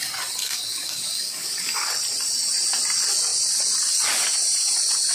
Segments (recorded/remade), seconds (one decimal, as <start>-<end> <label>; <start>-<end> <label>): 0.0-0.4 recorded; 0.4-1.9 remade; 1.9-5.1 recorded